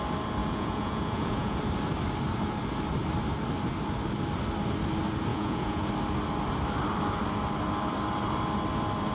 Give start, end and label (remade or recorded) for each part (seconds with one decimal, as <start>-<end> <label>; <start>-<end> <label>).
0.0-0.4 recorded; 0.4-1.6 remade; 1.6-5.3 recorded; 5.3-5.9 remade; 5.9-9.1 recorded